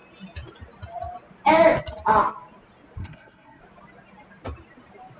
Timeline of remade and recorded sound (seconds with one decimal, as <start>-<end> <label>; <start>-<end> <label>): 0.0-3.0 recorded; 3.0-3.6 remade; 3.6-5.2 recorded